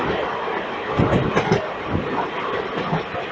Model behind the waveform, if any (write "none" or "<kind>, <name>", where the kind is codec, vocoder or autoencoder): none